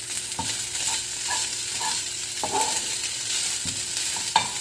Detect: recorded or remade recorded